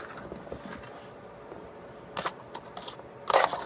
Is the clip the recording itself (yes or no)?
yes